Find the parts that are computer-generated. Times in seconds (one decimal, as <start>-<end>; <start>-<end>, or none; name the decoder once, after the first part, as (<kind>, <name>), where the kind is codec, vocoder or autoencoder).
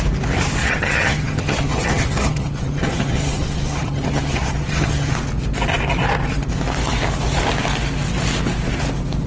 0.6-5.1 (vocoder, HiFi-GAN)